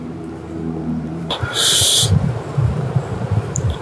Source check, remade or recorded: remade